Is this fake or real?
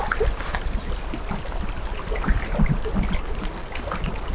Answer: real